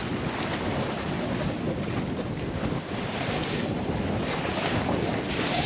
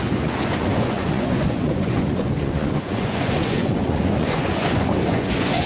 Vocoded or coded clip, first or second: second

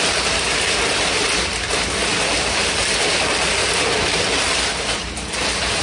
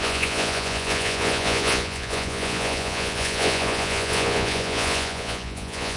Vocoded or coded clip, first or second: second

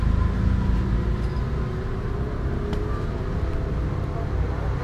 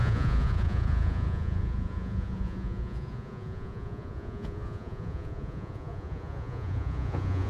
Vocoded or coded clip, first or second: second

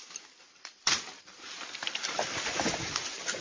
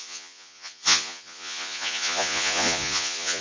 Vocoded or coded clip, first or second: second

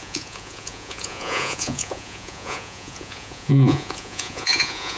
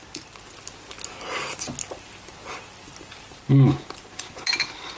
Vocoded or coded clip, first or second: first